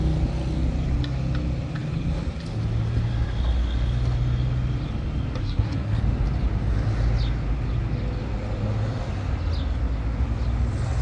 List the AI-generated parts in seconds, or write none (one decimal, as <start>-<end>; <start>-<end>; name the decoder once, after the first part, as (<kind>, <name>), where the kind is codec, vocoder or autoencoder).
5.4-6.0 (codec, SNAC)